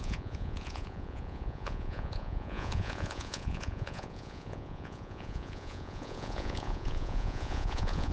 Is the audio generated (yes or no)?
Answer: yes